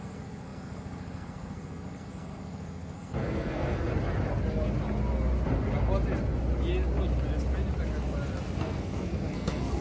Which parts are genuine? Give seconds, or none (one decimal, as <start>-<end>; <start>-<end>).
3.9-8.6